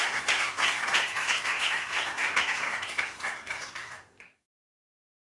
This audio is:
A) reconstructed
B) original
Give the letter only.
A